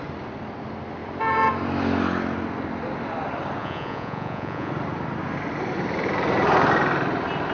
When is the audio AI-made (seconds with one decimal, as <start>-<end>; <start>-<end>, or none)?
3.6-4.7